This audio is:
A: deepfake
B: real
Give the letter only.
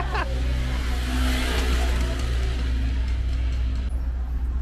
B